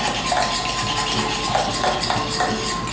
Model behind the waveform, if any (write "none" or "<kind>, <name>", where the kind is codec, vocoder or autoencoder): none